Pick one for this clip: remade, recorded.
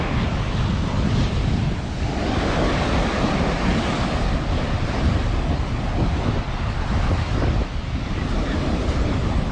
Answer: recorded